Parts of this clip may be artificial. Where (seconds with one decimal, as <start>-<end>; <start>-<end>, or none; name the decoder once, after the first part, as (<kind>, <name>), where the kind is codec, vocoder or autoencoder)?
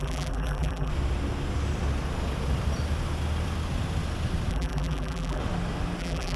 0.0-0.9 (vocoder, BigVGAN v2); 4.5-5.4; 6.0-6.4